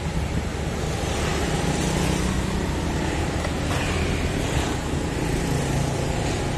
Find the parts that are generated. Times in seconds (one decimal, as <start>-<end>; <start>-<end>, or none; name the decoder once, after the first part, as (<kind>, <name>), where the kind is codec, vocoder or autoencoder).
none